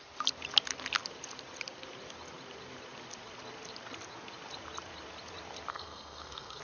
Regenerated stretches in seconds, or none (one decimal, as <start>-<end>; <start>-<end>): 5.7-6.6